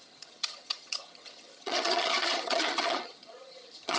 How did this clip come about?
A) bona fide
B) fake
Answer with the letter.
B